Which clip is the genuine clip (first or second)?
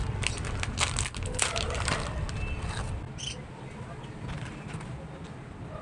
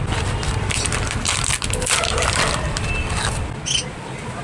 first